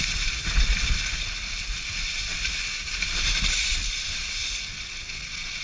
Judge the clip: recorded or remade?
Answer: recorded